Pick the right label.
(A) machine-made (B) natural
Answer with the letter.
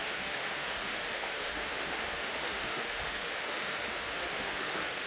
A